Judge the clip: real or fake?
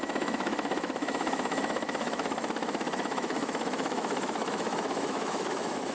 fake